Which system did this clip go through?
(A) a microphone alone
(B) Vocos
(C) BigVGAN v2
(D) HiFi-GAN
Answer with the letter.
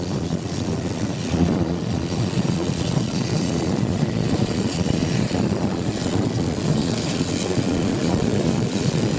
B